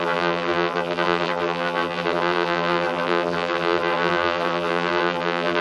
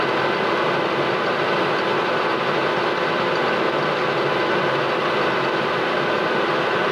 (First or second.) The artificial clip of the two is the first